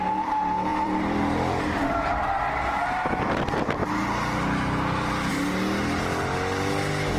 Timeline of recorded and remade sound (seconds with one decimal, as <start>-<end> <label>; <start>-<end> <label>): 0.0-0.7 recorded; 0.7-2.3 remade; 2.3-7.2 recorded